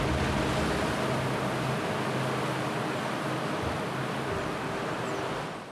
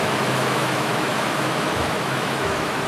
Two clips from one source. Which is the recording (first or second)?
first